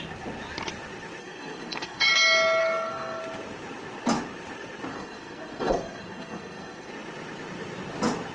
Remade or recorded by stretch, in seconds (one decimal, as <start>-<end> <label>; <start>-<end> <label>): 0.0-1.2 recorded; 1.2-2.1 remade; 2.1-2.6 recorded; 2.6-3.2 remade; 3.2-4.9 recorded; 4.9-6.9 remade; 6.9-8.3 recorded